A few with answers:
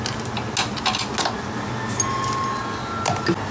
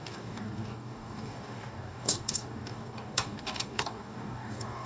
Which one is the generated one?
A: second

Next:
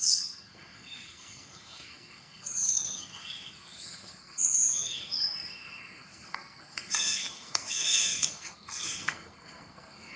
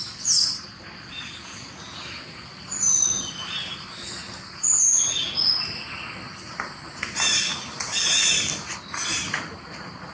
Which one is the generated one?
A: first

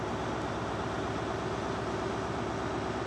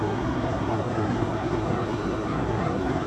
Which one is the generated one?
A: second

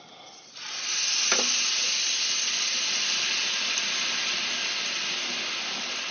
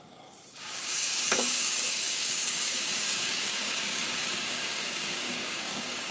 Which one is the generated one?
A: second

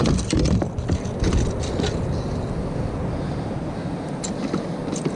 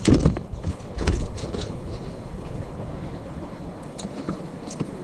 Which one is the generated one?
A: second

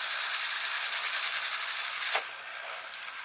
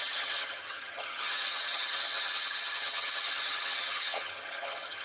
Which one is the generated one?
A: second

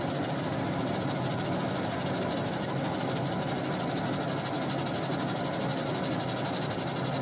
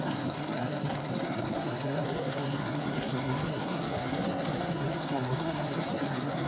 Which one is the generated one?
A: second